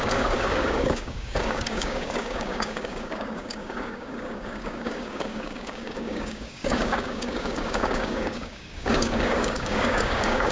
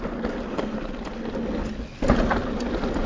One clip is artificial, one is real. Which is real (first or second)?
second